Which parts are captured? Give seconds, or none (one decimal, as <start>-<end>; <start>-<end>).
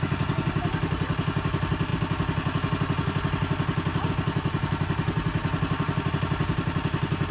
0.0-7.3